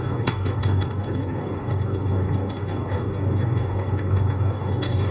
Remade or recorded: remade